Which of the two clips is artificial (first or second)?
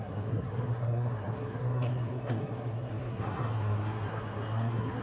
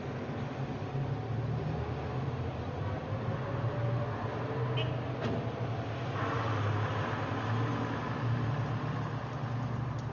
first